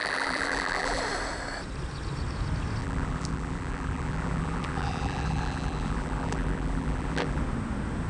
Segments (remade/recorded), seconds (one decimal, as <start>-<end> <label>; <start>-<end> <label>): 0.0-1.0 remade; 1.0-2.8 recorded; 2.8-7.4 remade; 7.4-8.1 recorded